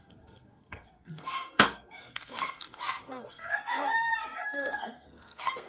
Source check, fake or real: fake